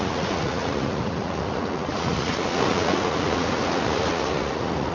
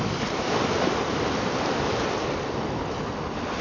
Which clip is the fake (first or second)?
first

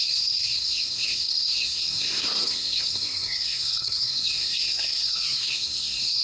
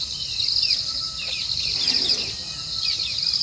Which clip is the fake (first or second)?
first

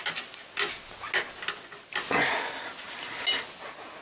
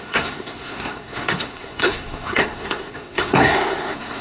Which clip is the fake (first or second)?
second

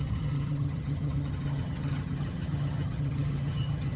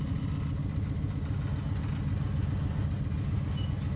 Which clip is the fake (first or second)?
first